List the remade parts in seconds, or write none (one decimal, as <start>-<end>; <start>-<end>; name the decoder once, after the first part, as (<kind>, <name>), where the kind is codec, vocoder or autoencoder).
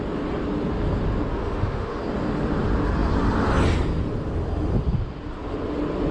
1.3-2.0 (autoencoder, DAC-VAE)